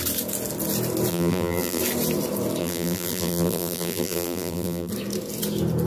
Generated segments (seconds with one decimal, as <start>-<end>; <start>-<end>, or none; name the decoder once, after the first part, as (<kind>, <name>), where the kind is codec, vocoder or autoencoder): 1.1-1.8 (vocoder, BigVGAN v2); 2.6-4.9